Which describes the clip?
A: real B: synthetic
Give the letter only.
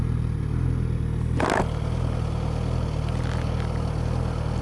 A